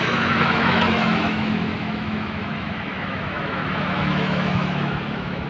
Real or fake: fake